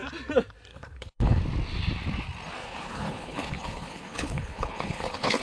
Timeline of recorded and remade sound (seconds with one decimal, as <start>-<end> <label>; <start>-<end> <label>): 0.0-0.7 recorded; 0.7-1.4 remade; 1.4-2.6 recorded; 2.6-5.4 remade

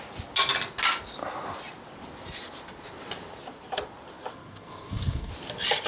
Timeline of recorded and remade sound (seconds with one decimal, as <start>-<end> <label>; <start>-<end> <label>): 0.0-4.3 recorded; 4.3-5.3 remade; 5.3-5.9 recorded

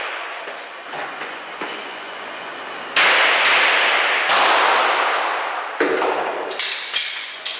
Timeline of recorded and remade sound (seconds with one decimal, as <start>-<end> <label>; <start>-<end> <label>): 0.0-2.5 remade; 2.5-7.1 recorded; 7.1-7.6 remade

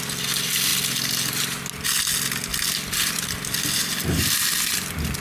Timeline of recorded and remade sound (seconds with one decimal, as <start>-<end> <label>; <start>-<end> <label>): 0.0-5.2 recorded